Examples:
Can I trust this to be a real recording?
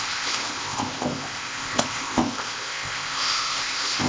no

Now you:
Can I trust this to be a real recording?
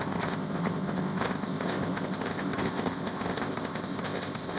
no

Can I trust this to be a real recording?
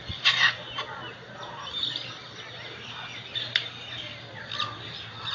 yes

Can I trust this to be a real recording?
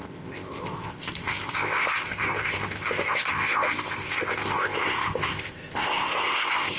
no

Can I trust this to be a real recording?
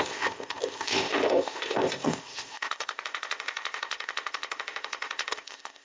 no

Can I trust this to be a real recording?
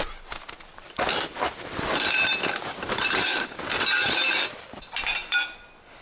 yes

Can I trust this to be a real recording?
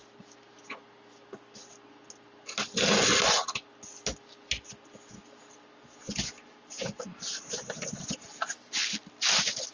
yes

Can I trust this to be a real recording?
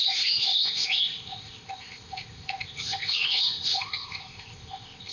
no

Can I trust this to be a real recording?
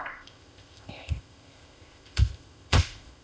no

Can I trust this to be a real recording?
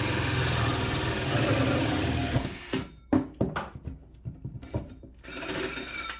yes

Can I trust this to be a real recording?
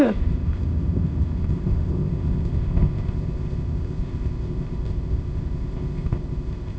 no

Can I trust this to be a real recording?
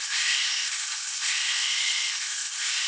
no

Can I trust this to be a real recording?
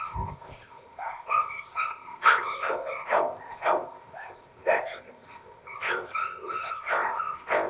no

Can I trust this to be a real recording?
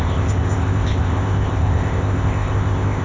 no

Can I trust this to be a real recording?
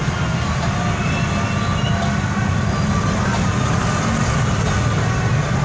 yes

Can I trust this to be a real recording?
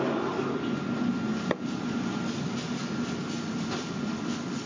yes